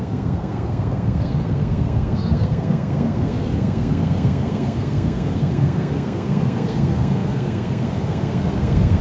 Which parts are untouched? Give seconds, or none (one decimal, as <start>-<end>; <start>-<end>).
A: none

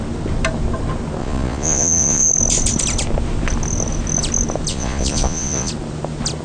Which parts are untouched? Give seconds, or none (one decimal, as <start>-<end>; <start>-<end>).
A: 0.0-1.2; 2.3-4.7; 5.7-6.4

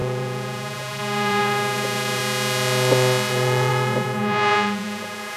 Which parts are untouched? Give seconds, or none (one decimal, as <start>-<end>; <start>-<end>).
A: 2.2-3.3

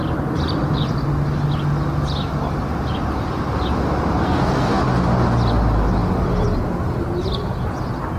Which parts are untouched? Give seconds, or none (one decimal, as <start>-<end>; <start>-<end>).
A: 0.0-4.2; 4.8-8.2

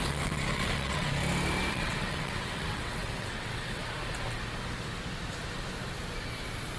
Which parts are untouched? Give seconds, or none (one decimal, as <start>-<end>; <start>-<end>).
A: 1.2-1.7; 3.8-6.8